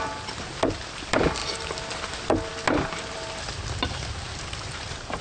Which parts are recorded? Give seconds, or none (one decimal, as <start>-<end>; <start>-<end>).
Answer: 0.0-5.2